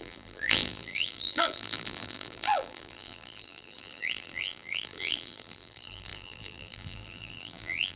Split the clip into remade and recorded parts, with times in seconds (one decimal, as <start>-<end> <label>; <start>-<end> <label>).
0.0-8.0 remade